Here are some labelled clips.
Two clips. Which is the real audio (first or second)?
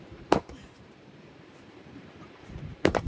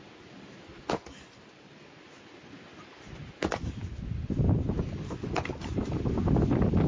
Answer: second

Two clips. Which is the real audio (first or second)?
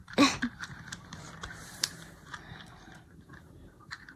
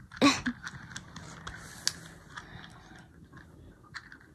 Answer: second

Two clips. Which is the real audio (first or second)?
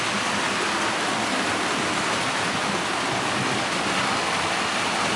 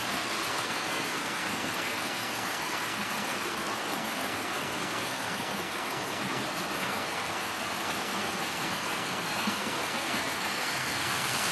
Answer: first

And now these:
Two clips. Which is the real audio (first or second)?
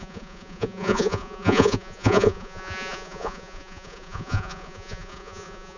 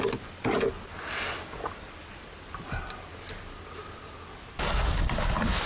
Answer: second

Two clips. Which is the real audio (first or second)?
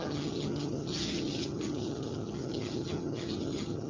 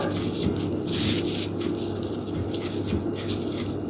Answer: second